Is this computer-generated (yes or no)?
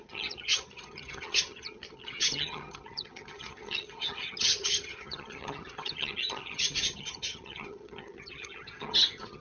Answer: yes